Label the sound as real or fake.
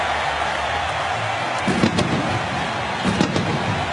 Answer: real